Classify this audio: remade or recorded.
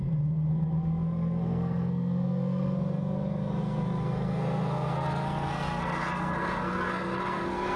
remade